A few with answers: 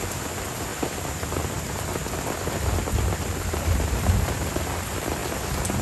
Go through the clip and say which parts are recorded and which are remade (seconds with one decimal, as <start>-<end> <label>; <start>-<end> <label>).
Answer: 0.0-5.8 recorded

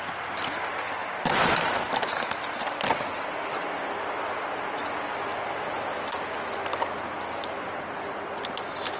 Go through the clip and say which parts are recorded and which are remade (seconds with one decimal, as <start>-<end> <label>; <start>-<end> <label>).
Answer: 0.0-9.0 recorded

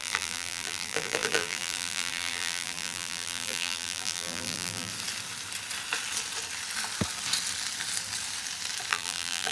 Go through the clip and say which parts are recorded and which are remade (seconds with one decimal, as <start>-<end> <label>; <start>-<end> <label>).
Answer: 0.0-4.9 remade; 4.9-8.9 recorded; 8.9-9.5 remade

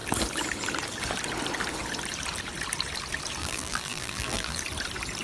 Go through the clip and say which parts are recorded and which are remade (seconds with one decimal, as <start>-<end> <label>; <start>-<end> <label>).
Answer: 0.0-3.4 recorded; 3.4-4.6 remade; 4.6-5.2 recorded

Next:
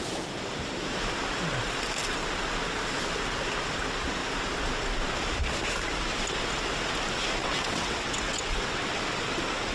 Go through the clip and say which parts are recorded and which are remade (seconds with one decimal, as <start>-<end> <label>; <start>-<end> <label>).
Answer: 0.0-7.4 recorded; 7.4-9.0 remade; 9.0-9.7 recorded

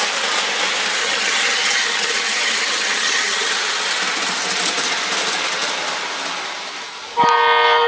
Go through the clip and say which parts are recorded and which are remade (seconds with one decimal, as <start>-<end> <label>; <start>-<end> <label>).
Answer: 0.0-1.0 recorded; 1.0-3.5 remade; 3.5-7.9 recorded

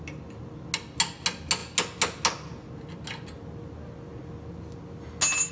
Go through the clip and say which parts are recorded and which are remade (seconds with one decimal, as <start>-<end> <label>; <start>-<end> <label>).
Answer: 0.0-5.5 recorded